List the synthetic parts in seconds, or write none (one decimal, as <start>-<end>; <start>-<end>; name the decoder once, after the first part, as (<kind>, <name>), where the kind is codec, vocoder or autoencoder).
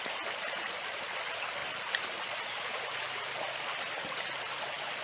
none